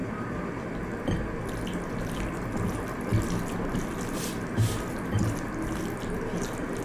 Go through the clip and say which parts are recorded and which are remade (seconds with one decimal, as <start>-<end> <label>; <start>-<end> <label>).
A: 0.0-6.8 recorded